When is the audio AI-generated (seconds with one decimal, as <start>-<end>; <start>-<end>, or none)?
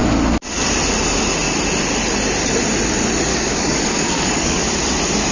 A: 3.3-4.7